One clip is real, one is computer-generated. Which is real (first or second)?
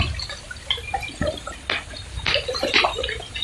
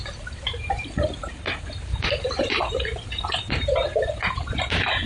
first